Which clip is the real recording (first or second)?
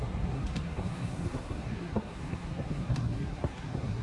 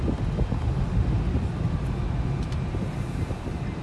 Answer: second